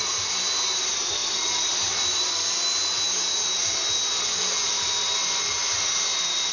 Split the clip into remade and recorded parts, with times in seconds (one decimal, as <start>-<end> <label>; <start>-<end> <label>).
0.0-6.5 recorded